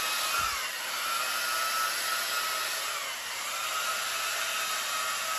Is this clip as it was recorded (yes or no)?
yes